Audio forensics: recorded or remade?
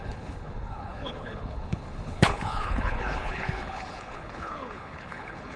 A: remade